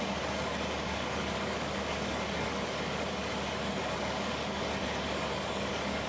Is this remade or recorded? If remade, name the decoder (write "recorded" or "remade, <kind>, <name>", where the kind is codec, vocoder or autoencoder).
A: remade, codec, DAC